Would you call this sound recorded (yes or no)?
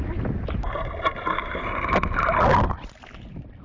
yes